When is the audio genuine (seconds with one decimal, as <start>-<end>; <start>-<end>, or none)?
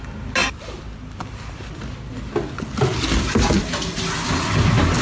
0.0-0.4; 1.9-5.0